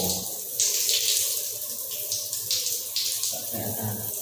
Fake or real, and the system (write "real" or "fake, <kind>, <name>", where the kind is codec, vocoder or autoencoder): real